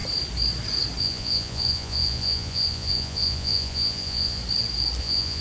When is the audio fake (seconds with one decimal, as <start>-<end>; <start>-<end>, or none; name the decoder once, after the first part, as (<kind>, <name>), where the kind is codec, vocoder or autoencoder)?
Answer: 1.0-4.4 (vocoder, Vocos); 5.0-5.4